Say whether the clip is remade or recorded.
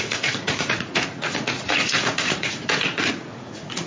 remade